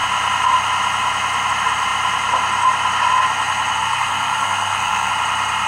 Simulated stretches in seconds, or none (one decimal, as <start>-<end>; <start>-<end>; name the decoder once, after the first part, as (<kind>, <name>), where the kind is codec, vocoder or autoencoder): 3.8-5.1 (codec, SNAC)